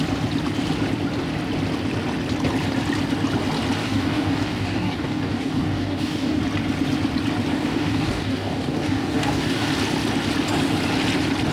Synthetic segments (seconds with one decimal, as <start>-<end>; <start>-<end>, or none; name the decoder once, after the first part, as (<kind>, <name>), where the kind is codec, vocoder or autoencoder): 3.8-6.4 (codec, DAC); 7.5-9.7